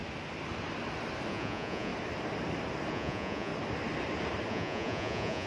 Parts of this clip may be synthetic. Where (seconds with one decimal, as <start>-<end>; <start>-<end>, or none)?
1.3-1.9; 2.9-3.5; 4.5-5.5